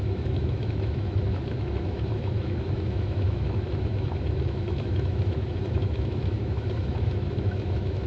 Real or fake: fake